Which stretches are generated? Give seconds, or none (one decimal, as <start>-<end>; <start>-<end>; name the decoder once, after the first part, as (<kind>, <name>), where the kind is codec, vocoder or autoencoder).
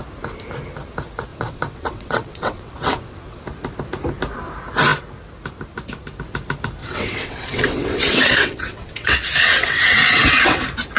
1.3-3.4 (vocoder, WaveNeXt); 6.8-10.6